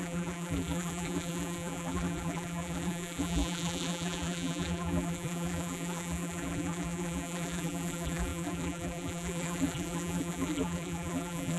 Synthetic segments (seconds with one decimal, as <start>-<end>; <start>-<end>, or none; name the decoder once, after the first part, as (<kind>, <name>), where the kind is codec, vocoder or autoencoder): 0.0-11.6 (vocoder, BigVGAN v2)